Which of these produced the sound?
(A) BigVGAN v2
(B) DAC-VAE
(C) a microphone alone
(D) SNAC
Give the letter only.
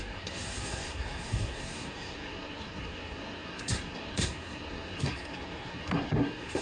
D